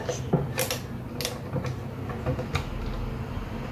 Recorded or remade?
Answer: recorded